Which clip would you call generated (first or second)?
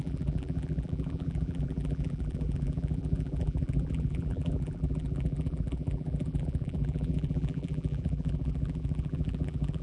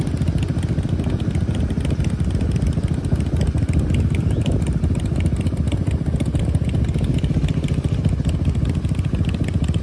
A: first